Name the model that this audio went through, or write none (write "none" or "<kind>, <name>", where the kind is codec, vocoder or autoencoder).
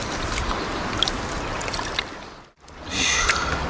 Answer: none